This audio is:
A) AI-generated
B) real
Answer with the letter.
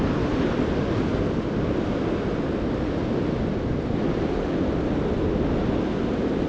B